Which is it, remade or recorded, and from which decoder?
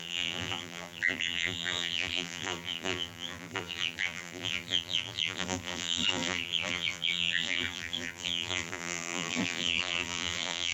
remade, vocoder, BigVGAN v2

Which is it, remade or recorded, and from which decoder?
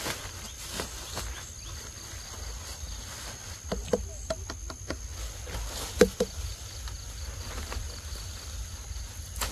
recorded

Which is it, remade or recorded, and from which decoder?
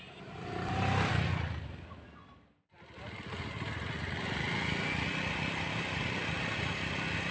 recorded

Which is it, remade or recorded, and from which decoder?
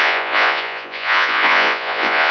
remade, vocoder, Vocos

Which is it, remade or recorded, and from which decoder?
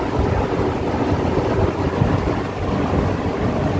recorded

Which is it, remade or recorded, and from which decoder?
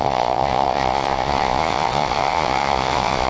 remade, vocoder, Vocos